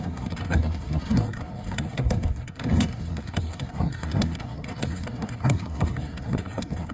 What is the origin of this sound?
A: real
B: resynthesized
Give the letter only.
B